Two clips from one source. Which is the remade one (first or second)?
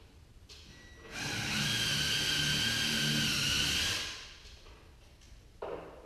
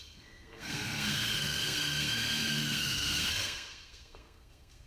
second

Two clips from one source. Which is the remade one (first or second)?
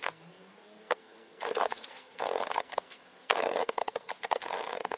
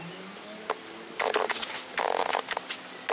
first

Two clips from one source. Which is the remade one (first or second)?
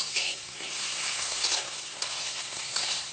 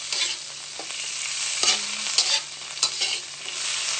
first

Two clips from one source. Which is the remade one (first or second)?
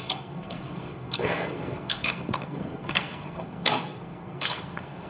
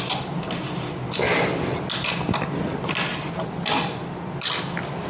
first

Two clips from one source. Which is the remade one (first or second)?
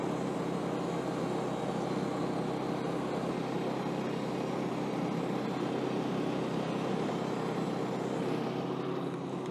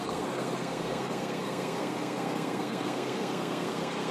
second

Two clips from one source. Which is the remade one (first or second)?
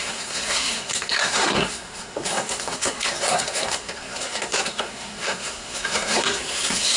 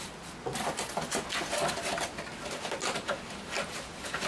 first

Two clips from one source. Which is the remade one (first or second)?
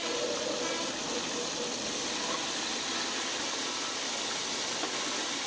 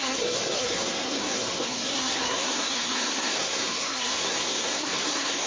second